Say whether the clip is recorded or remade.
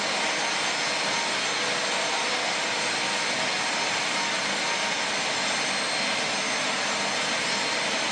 recorded